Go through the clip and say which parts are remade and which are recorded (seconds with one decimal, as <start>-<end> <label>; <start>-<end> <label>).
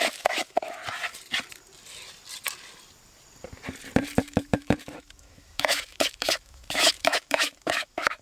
0.0-0.8 remade; 0.8-4.2 recorded; 4.2-8.2 remade